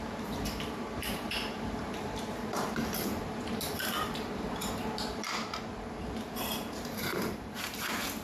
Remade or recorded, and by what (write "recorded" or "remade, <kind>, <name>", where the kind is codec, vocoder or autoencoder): remade, vocoder, BigVGAN v2